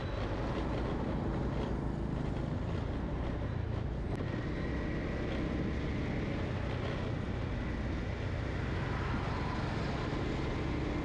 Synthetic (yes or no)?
no